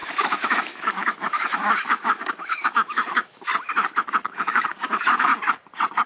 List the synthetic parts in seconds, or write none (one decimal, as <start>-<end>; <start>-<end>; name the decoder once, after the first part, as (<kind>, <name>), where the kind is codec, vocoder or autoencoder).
0.0-3.5 (autoencoder, DAC-VAE); 4.2-5.3